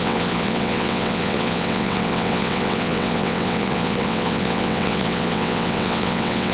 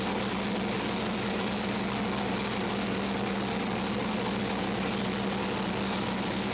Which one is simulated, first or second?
first